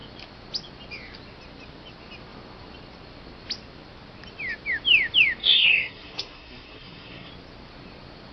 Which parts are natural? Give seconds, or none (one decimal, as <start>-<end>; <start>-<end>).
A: 0.0-5.4; 7.3-8.3